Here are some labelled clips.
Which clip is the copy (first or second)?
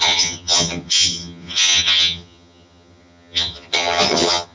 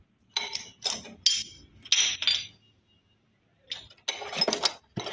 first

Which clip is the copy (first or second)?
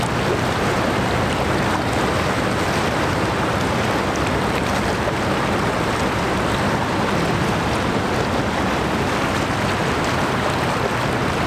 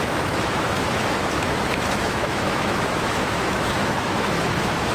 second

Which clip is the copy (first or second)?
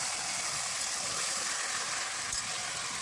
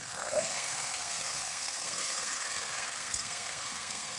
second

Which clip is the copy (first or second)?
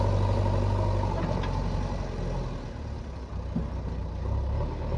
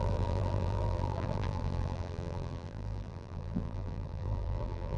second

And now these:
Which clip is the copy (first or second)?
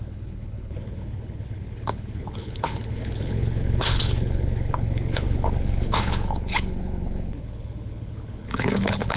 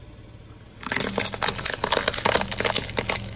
first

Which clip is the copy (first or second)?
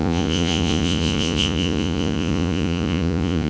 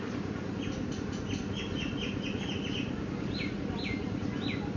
first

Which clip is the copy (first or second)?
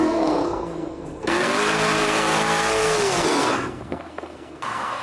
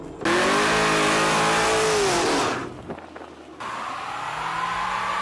first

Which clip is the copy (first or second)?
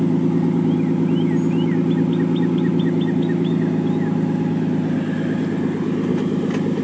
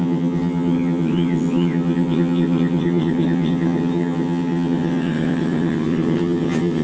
second